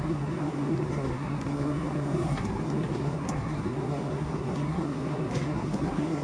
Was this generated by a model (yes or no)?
yes